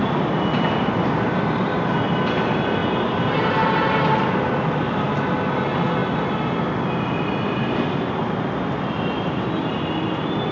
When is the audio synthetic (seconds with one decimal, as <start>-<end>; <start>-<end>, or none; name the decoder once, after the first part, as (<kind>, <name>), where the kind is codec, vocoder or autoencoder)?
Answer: none